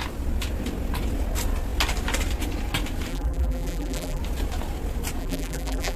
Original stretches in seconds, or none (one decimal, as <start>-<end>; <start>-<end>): 0.0-3.1; 4.2-5.2